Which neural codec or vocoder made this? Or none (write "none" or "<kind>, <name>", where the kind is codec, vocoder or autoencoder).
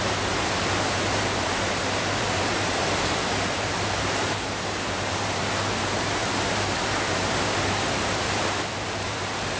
vocoder, BigVGAN v2